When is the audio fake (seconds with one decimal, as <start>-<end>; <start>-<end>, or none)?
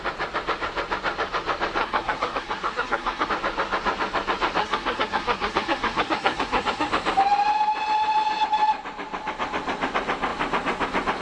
1.8-3.3; 4.6-6.9